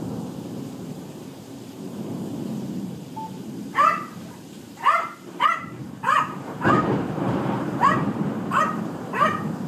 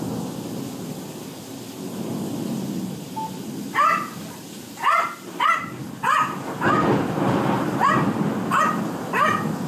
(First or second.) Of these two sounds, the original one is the second